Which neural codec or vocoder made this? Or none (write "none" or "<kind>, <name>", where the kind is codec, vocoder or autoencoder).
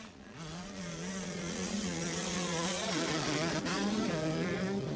vocoder, Vocos